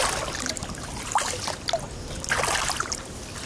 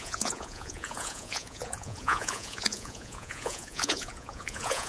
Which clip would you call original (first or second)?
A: first